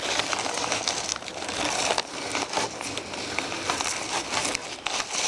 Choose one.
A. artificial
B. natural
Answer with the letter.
B